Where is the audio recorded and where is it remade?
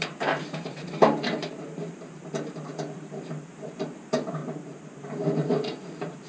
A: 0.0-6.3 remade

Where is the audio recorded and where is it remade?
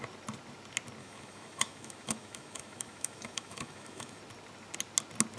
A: 0.0-1.0 recorded; 1.0-4.2 remade; 4.2-5.4 recorded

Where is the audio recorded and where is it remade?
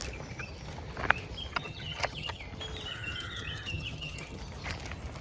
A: 0.0-1.5 recorded; 1.5-2.4 remade; 2.4-2.9 recorded; 2.9-4.4 remade; 4.4-5.2 recorded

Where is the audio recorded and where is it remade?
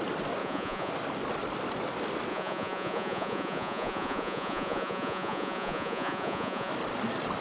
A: 0.0-0.4 recorded; 0.4-0.9 remade; 0.9-2.3 recorded; 2.3-6.7 remade; 6.7-7.4 recorded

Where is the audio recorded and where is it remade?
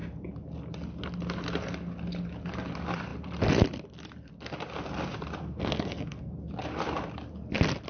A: 0.0-5.4 recorded; 5.4-6.5 remade; 6.5-7.9 recorded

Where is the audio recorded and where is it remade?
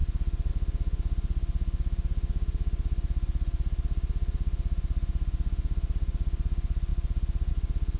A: 0.0-8.0 recorded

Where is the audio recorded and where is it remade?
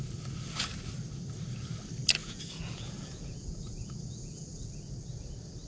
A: 0.0-2.2 recorded; 2.2-4.9 remade; 4.9-5.7 recorded